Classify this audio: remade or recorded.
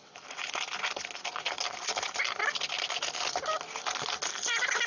recorded